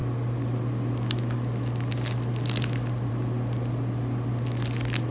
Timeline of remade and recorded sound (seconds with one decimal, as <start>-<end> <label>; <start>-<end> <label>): 0.0-5.1 recorded